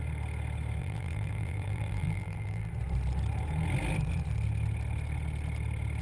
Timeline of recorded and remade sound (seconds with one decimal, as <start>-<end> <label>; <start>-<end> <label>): 0.0-0.8 recorded; 0.8-2.7 remade; 2.7-6.0 recorded